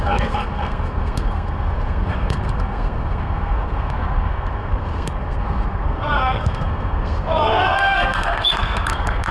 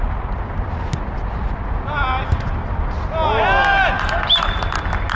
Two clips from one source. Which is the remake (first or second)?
first